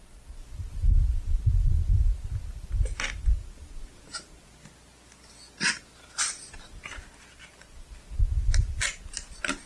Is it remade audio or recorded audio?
recorded